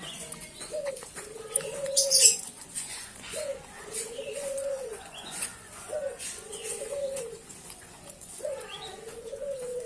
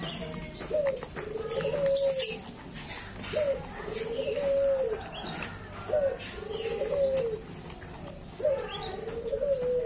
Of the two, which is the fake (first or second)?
first